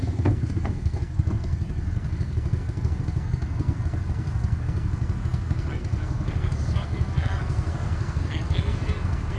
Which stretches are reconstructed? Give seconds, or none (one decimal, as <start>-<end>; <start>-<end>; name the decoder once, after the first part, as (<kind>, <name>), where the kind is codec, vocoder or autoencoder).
0.0-9.4 (codec, SNAC)